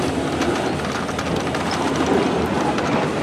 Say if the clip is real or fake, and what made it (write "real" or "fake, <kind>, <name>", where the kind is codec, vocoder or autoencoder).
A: real